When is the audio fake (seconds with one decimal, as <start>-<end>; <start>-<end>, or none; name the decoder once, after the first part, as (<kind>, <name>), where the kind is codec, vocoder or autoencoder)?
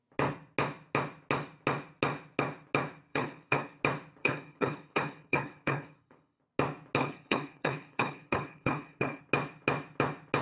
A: 3.1-3.8 (codec, HILCodec); 4.2-6.4; 7.0-9.2